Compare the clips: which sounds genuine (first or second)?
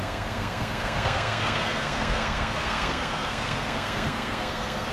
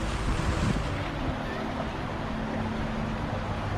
second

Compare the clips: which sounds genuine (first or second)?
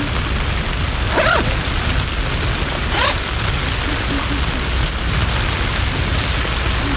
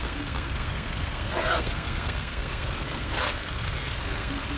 first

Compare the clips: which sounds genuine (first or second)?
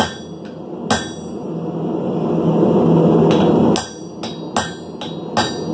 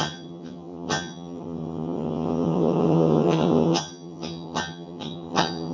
first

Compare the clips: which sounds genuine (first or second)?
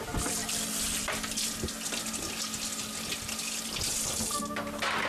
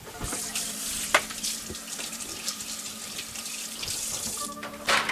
first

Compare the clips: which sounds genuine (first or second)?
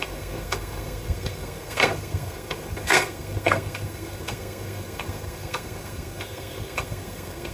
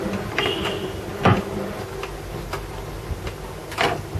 second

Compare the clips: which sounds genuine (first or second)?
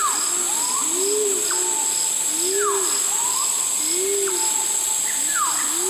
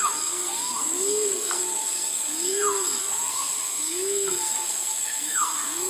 first